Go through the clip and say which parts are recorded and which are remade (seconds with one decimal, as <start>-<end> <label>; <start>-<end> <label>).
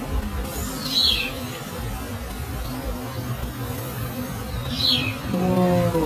0.0-6.1 recorded